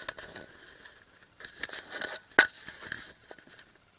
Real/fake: real